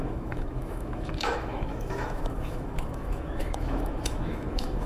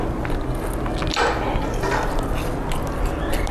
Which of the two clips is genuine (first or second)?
second